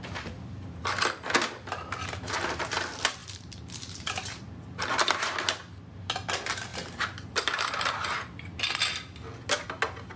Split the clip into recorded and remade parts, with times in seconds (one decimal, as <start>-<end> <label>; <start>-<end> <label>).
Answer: 0.0-3.2 recorded; 3.2-4.4 remade; 4.4-6.7 recorded; 6.7-8.6 remade; 8.6-10.2 recorded